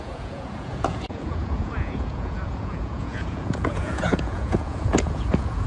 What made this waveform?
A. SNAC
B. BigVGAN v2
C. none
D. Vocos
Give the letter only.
D